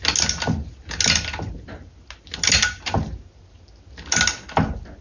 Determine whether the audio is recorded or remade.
recorded